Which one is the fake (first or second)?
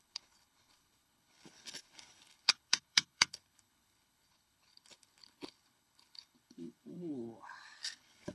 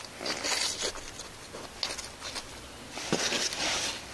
first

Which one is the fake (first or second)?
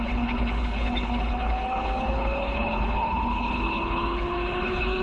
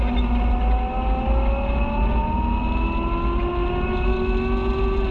first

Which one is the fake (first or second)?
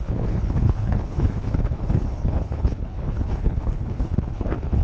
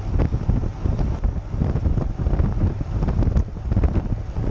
first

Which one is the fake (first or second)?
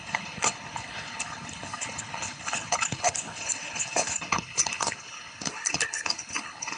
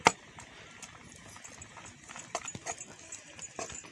first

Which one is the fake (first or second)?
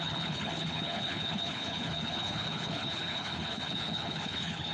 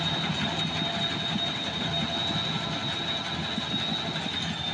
first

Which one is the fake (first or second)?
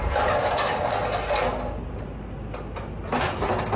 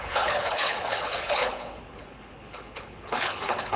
second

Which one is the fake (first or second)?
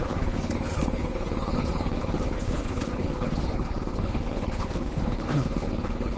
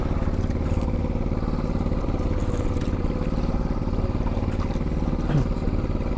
first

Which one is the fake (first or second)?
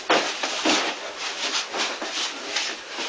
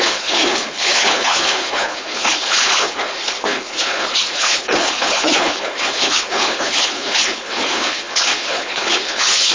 second